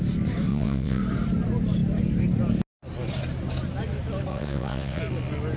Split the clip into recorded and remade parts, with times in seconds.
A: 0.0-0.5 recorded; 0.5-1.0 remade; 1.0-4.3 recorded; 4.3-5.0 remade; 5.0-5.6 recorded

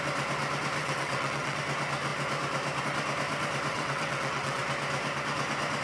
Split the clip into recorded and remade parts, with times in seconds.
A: 0.0-0.8 recorded; 0.8-1.6 remade; 1.6-3.7 recorded; 3.7-4.6 remade; 4.6-5.8 recorded

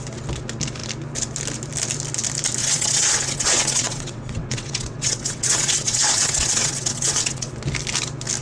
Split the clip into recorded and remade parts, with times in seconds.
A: 0.0-2.6 recorded; 2.6-7.5 remade; 7.5-8.4 recorded

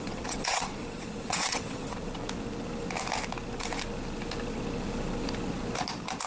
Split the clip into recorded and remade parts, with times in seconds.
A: 0.0-2.2 remade; 2.2-6.3 recorded